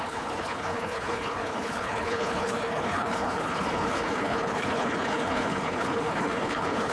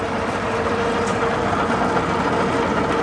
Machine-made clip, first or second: first